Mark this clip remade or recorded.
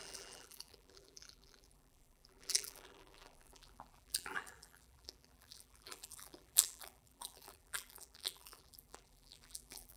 remade